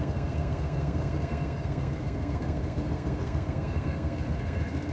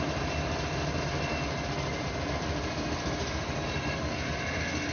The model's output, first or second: first